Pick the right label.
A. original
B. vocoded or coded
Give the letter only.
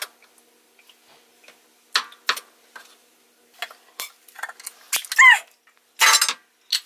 A